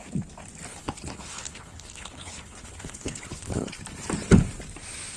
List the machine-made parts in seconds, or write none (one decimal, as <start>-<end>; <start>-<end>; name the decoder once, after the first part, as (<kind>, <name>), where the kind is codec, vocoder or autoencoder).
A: 0.7-3.8 (codec, HILCodec)